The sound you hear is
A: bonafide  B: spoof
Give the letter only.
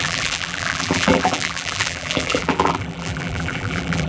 B